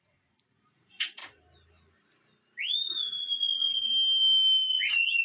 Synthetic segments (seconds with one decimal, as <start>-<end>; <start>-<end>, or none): 0.0-1.2; 2.8-3.9; 4.7-5.2